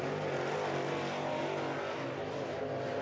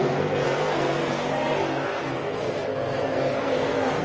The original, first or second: first